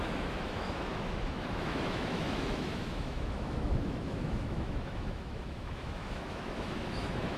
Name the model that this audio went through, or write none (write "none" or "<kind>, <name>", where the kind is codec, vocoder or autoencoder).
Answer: autoencoder, DAC-VAE